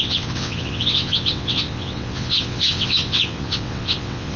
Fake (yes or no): yes